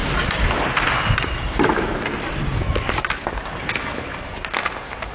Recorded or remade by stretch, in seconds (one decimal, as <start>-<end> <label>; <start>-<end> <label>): 0.0-5.1 recorded